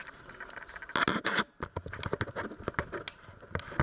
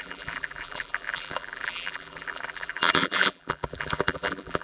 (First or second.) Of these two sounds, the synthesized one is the second